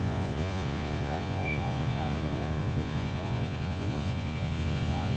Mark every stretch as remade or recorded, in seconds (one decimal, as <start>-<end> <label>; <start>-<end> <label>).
0.0-5.2 remade